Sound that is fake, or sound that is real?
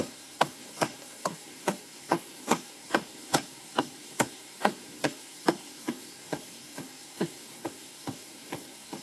fake